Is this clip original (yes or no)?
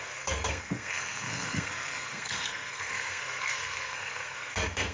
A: no